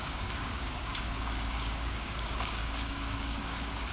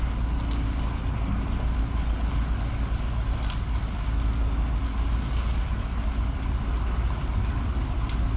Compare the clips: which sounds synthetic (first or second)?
first